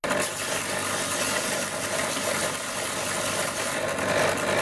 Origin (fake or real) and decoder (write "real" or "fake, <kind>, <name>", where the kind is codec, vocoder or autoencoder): real